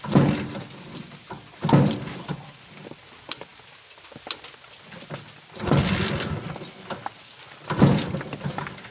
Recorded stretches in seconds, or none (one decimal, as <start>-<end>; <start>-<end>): 0.0-8.9